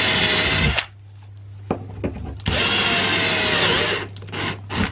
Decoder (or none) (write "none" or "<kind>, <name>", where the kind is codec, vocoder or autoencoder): none